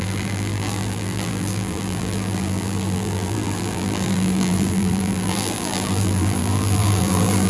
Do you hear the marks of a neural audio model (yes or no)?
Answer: yes